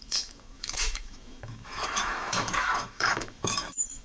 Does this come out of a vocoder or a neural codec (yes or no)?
yes